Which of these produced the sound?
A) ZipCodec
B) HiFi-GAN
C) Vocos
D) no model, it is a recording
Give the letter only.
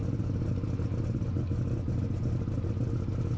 D